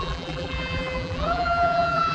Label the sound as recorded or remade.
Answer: remade